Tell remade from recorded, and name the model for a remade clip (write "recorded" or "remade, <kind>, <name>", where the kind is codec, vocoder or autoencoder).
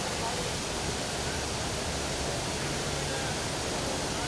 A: recorded